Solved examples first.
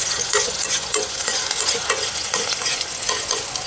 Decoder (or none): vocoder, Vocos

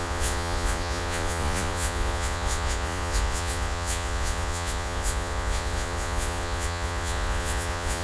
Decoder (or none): vocoder, Vocos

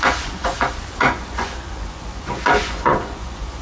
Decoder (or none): vocoder, Vocos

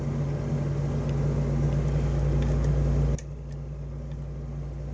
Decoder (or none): none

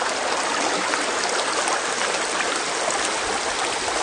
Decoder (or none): none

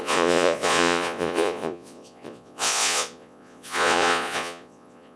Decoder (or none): vocoder, Vocos